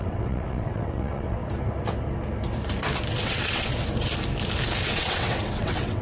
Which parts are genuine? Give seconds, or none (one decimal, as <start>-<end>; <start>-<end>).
1.4-3.1; 3.7-4.8